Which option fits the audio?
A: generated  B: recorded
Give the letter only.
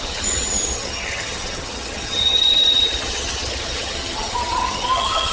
A